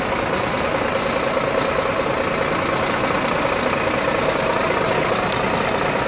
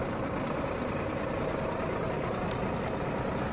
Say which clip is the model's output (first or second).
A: second